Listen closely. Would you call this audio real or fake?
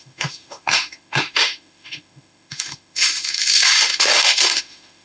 fake